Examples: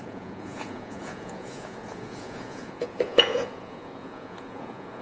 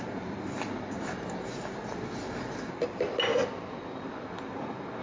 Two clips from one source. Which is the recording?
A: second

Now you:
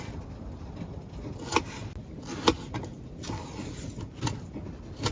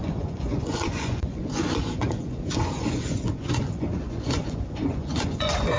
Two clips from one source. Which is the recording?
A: first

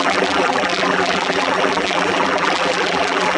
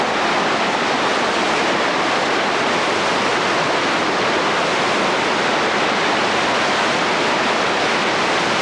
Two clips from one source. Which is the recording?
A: second